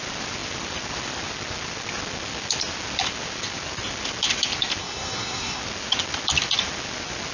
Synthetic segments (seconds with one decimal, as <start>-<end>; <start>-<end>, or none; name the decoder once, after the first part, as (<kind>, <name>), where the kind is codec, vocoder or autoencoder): 4.8-5.6 (codec, SNAC)